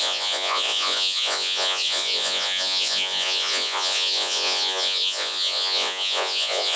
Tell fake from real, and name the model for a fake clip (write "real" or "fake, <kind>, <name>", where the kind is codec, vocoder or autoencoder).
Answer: fake, vocoder, Vocos